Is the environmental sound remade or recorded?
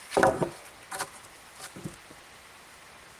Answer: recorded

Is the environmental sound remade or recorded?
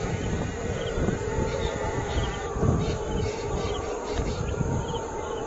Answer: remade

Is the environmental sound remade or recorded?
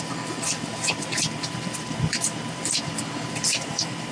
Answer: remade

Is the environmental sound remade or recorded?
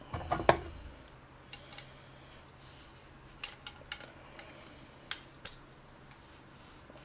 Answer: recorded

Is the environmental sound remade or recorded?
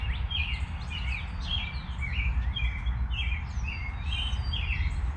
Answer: recorded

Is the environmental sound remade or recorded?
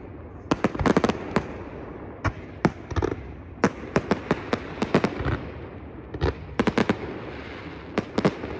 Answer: recorded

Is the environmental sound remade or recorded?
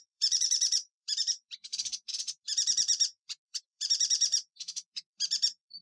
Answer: remade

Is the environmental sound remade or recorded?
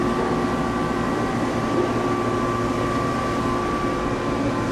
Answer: recorded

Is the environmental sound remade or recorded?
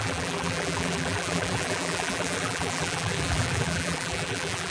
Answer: remade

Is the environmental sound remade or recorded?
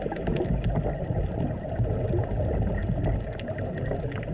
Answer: recorded